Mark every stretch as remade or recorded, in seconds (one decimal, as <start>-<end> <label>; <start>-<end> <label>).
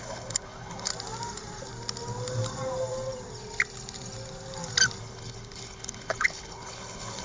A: 0.0-0.9 remade; 0.9-5.0 recorded; 5.0-7.2 remade